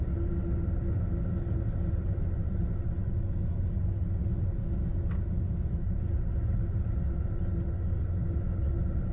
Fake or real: real